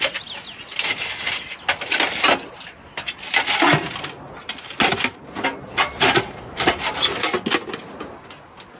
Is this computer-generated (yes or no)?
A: no